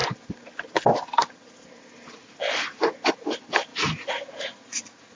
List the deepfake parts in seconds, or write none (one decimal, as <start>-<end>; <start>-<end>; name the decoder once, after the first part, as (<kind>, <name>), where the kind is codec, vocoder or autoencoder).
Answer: 3.7-5.2 (vocoder, Vocos)